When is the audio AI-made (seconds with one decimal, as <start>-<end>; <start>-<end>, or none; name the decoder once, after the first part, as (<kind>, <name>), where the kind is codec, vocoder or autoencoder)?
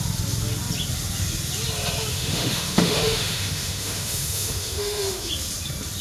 2.1-5.3 (autoencoder, DAC-VAE)